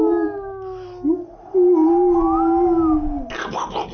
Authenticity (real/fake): real